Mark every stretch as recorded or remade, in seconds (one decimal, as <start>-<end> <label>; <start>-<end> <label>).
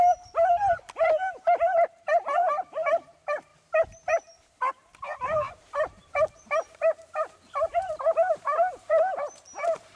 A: 0.0-3.5 remade; 3.5-4.7 recorded; 4.7-10.0 remade